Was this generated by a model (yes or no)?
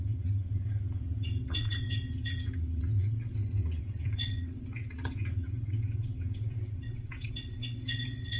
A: yes